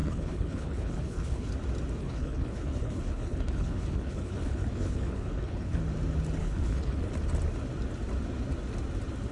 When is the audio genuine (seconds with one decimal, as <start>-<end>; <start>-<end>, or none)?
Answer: 1.5-2.0; 5.8-6.4; 7.1-9.3